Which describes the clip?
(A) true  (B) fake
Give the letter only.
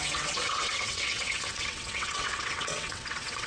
B